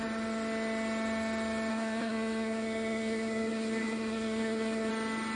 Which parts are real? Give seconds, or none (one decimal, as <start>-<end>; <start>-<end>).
0.0-1.7; 4.9-5.4